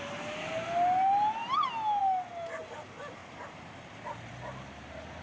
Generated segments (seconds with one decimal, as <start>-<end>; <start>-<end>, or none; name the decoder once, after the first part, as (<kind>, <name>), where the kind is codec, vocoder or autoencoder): none